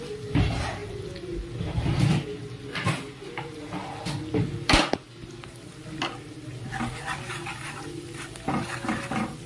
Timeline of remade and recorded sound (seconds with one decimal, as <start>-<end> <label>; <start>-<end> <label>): 0.0-9.5 recorded